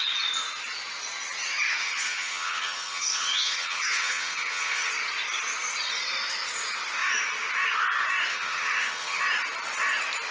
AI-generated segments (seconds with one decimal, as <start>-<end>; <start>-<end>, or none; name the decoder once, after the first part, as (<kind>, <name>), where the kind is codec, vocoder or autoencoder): 1.8-4.9 (vocoder, HiFi-GAN); 8.3-9.2